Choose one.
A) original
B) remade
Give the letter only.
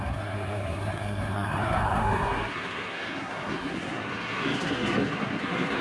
B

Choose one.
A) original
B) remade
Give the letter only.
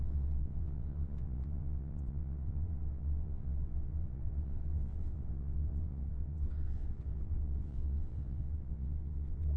B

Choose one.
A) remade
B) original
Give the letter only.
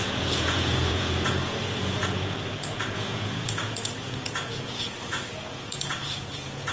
A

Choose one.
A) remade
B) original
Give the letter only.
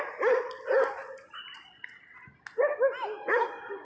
B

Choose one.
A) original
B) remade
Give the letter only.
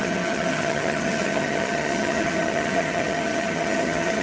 B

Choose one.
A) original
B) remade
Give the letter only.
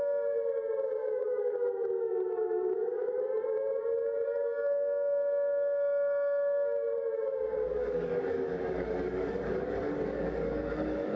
B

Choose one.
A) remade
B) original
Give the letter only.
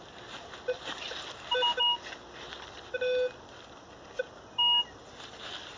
B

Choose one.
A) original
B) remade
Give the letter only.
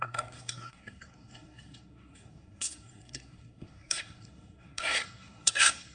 B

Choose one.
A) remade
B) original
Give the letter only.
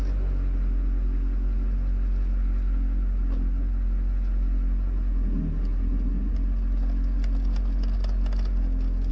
B